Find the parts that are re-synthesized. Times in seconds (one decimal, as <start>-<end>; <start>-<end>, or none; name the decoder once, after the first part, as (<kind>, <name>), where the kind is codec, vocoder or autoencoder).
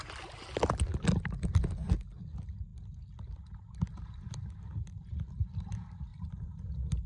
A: none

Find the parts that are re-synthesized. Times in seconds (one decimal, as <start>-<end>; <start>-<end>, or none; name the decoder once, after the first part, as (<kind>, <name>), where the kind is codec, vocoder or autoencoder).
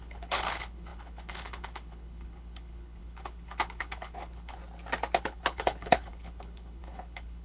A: 0.0-4.6 (codec, HILCodec); 5.2-7.4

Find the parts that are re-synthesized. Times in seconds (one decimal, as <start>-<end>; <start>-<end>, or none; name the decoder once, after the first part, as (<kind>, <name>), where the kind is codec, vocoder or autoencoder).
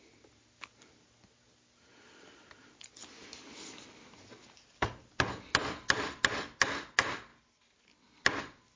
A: none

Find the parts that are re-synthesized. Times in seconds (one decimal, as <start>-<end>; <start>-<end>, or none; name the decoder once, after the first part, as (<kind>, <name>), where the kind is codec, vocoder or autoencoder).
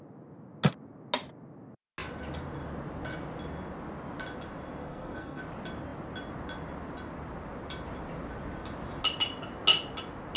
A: 4.8-5.4 (codec, SNAC)